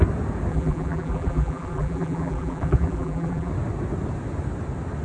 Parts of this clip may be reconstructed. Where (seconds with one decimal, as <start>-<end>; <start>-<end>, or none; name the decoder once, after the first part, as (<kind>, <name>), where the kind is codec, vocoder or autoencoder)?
0.5-3.5 (vocoder, BigVGAN v2)